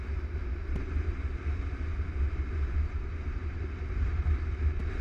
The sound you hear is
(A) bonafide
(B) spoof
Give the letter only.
A